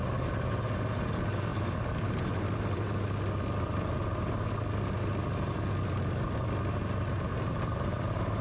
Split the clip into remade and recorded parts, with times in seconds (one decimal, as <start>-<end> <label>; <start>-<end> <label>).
0.0-7.3 recorded; 7.3-8.4 remade